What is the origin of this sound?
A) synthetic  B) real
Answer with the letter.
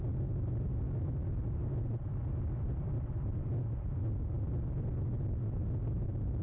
B